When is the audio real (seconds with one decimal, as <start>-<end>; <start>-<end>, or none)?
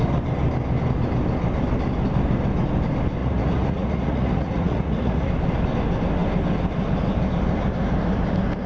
0.0-3.2; 5.3-8.7